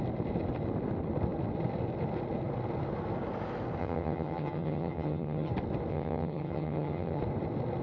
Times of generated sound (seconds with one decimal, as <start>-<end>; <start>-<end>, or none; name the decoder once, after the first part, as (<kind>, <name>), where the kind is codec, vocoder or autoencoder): 3.8-5.5 (vocoder, HiFi-GAN); 5.9-7.2